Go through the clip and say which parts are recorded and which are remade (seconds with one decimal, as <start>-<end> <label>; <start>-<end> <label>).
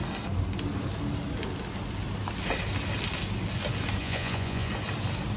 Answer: 0.0-4.0 recorded; 4.0-4.7 remade; 4.7-5.4 recorded